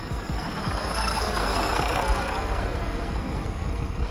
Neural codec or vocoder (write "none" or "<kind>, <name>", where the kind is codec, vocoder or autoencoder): codec, SNAC